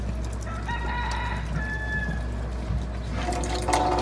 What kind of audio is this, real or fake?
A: real